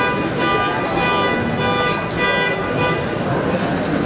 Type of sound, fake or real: real